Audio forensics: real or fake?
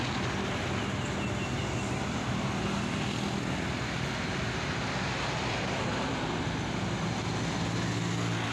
real